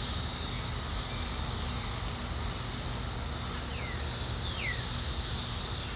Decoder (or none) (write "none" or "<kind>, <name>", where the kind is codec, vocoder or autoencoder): none